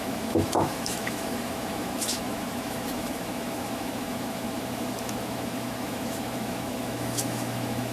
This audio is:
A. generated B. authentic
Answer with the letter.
A